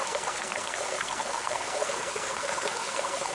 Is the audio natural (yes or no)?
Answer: no